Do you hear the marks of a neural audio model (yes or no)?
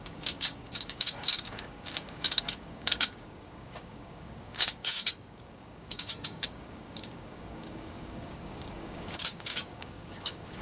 yes